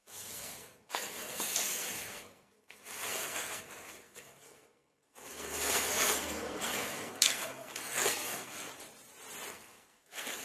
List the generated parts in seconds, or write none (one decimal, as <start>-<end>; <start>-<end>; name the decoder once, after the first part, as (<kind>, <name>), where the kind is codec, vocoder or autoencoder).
0.0-8.7 (codec, SNAC); 9.5-10.4